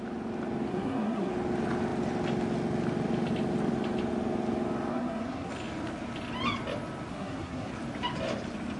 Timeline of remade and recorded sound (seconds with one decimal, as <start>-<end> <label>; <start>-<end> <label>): 0.0-0.7 recorded; 0.7-1.3 remade; 1.3-4.9 recorded; 4.9-5.5 remade; 5.5-7.1 recorded; 7.1-7.7 remade; 7.7-8.8 recorded